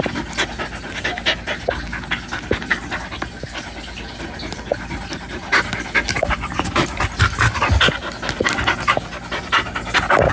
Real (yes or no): yes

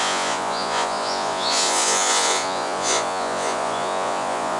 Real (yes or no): no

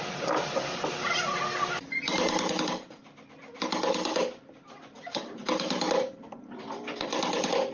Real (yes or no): yes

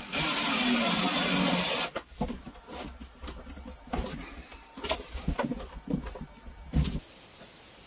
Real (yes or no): yes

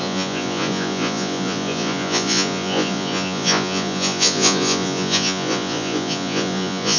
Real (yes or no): no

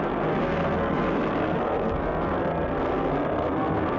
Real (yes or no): no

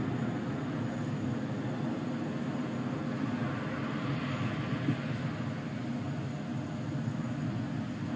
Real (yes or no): yes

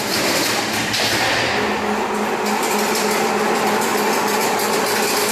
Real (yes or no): yes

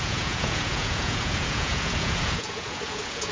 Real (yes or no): no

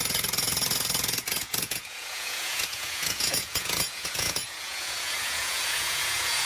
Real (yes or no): no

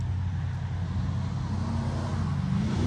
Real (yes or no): yes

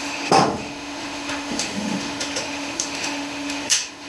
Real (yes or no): no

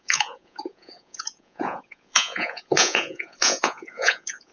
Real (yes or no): no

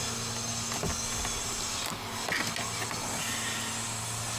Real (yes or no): yes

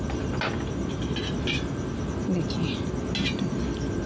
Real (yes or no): yes